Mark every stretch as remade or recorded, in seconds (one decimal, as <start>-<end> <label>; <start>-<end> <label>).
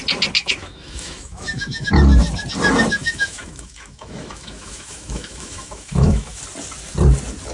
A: 0.0-0.4 recorded; 0.4-1.9 remade; 1.9-3.0 recorded; 3.0-6.4 remade; 6.4-7.5 recorded